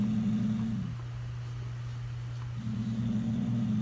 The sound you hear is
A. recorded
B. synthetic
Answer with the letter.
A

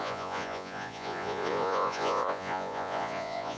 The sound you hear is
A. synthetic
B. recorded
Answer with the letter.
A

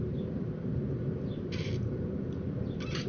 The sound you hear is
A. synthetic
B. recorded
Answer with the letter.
A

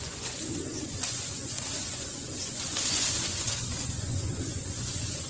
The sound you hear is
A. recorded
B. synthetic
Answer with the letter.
B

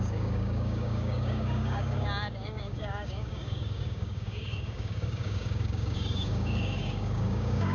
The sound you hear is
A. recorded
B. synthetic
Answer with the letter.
B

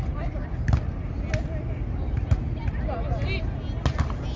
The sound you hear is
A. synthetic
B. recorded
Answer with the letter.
B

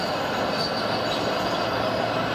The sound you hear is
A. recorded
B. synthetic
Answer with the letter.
A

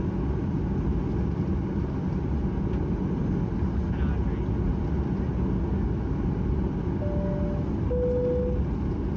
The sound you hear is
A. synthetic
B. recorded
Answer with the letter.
B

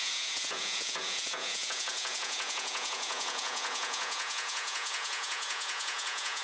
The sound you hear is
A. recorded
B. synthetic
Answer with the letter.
B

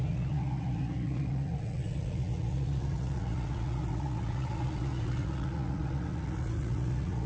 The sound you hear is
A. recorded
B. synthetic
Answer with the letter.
B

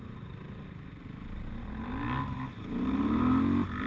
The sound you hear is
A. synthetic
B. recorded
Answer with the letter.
B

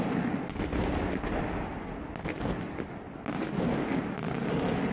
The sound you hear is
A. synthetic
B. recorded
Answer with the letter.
B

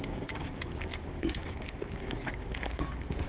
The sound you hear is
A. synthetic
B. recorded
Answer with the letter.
A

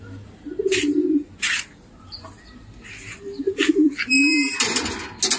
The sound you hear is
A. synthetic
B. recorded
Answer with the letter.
B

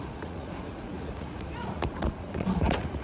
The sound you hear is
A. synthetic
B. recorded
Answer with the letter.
A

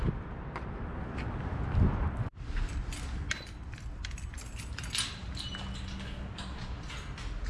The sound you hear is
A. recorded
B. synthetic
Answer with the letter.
A